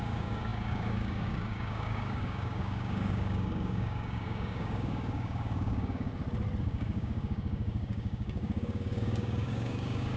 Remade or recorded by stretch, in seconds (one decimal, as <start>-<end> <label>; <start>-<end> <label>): 0.0-6.1 remade; 6.1-6.6 recorded; 6.6-10.2 remade